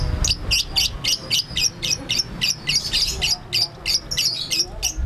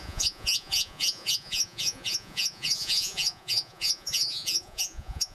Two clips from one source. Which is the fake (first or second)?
second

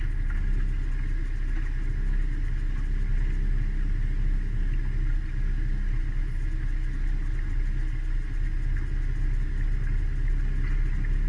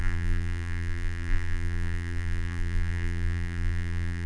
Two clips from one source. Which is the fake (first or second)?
second